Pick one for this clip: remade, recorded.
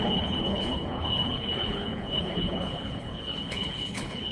remade